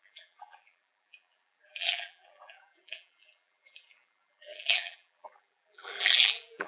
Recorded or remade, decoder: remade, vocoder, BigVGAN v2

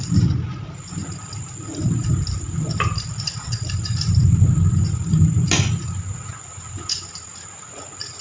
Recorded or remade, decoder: recorded